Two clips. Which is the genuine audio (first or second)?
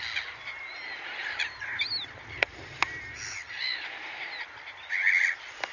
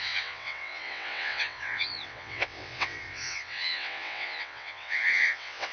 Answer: first